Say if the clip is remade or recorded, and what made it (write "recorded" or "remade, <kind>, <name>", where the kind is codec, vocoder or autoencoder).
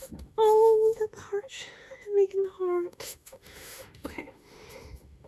remade, autoencoder, DAC-VAE